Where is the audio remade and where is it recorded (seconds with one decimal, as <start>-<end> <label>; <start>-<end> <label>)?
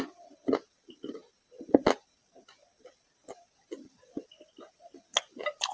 0.0-3.2 recorded; 3.2-4.9 remade; 4.9-5.7 recorded